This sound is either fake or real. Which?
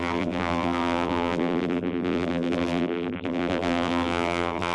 fake